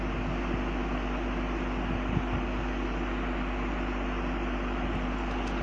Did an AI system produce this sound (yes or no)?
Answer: no